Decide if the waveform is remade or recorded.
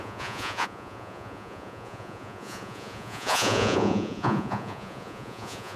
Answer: remade